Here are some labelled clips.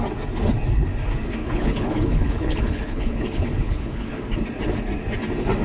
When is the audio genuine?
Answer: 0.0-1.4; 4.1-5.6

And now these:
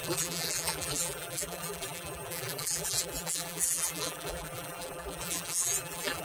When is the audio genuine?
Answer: none

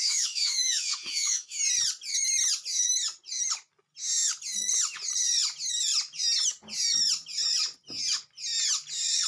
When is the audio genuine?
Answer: 1.6-9.3

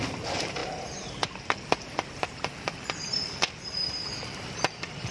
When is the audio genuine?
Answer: none